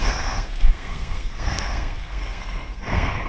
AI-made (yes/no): yes